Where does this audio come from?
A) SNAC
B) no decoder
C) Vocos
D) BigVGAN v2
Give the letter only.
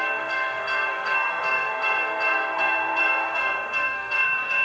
A